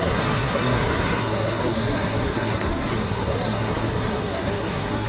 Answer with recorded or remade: remade